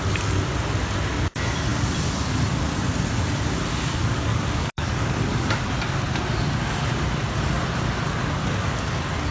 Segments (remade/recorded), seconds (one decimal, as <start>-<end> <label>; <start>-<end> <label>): 0.0-3.7 recorded; 3.7-5.6 remade; 5.6-9.3 recorded